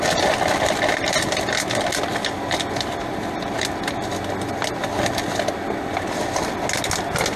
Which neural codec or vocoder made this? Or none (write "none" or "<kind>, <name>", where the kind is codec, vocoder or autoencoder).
none